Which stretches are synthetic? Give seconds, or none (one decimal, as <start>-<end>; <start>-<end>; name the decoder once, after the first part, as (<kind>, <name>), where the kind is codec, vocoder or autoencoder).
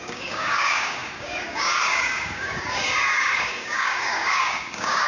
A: 0.0-5.1 (codec, DAC)